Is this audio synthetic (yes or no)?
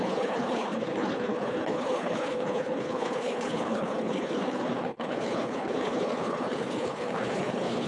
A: yes